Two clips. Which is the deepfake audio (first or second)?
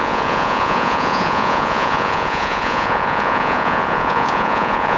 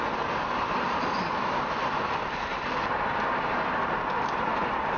first